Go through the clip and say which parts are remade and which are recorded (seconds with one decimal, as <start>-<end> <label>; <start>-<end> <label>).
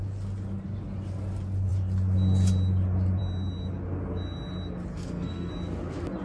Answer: 0.0-4.9 recorded; 4.9-5.5 remade; 5.5-6.2 recorded